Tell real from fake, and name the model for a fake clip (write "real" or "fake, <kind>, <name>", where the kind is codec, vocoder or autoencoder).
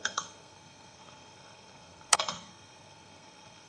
fake, codec, SNAC